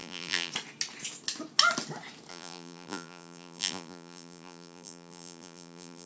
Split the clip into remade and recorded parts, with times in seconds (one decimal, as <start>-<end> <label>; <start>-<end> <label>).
0.0-0.5 remade; 0.5-2.3 recorded; 2.3-6.1 remade